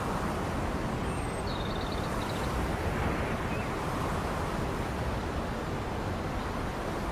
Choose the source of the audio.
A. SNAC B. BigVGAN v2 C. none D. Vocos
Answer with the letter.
C